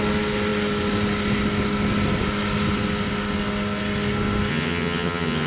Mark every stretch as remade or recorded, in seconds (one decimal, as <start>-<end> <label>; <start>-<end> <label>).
0.0-4.5 recorded; 4.5-5.5 remade